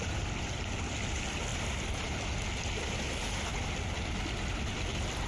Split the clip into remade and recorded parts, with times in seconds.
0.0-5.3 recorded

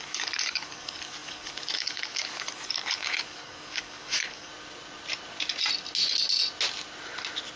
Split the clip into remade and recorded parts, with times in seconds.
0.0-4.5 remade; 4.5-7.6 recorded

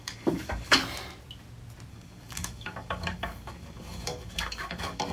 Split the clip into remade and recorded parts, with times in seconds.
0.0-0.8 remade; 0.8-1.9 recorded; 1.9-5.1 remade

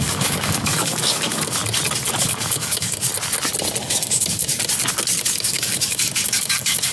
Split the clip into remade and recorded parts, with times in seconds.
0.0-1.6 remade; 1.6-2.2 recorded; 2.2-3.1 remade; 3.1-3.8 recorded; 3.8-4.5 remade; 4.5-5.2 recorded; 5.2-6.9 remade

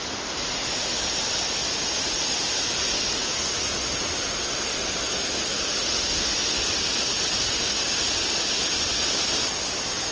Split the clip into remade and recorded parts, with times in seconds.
0.0-7.4 recorded; 7.4-8.0 remade; 8.0-10.1 recorded